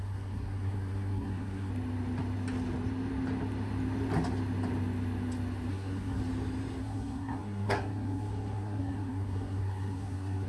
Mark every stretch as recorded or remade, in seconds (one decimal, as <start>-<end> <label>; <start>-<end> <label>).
0.0-1.7 remade; 1.7-5.7 recorded; 5.7-6.2 remade; 6.2-6.8 recorded; 6.8-10.5 remade